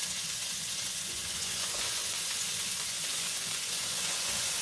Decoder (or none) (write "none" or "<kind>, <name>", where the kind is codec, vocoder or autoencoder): vocoder, Vocos